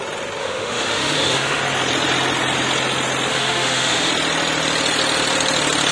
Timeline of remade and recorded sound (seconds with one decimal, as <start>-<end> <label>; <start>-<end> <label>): 0.0-0.4 recorded; 0.4-1.6 remade; 1.6-3.3 recorded; 3.3-4.1 remade; 4.1-5.9 recorded